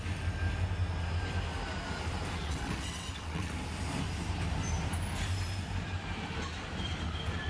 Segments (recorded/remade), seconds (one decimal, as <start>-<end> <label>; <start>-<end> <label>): 0.0-2.4 recorded; 2.4-3.5 remade; 3.5-7.5 recorded